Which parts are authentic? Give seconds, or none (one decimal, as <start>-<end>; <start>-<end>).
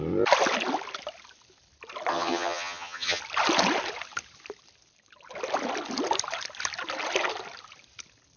0.0-2.1; 3.2-8.4